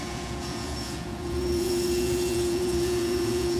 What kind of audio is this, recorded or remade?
remade